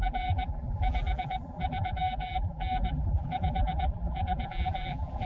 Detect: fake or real fake